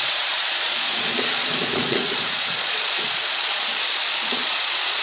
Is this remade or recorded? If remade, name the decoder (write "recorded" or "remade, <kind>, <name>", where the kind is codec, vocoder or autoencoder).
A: remade, vocoder, Vocos